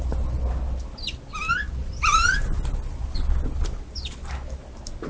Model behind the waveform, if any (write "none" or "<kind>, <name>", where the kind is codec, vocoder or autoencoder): none